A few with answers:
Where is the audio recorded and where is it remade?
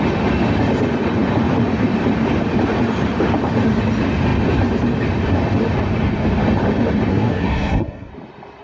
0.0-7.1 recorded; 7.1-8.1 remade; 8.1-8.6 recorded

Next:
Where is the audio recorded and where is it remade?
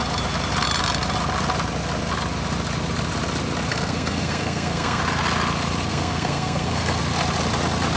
0.0-3.7 recorded; 3.7-5.0 remade; 5.0-5.9 recorded; 5.9-7.0 remade; 7.0-8.0 recorded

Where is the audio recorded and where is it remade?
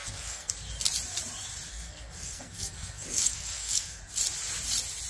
0.0-0.5 remade; 0.5-1.7 recorded; 1.7-4.0 remade; 4.0-5.1 recorded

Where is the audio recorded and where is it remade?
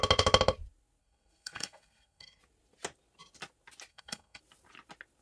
0.0-1.0 recorded; 1.0-2.4 remade; 2.4-3.9 recorded; 3.9-4.4 remade; 4.4-5.2 recorded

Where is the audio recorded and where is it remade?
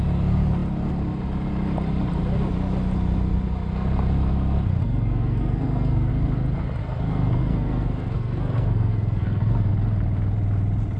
0.0-4.8 recorded; 4.8-6.1 remade; 6.1-6.8 recorded; 6.8-9.7 remade; 9.7-11.0 recorded